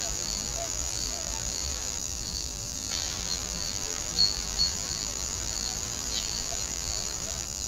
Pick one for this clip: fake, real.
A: fake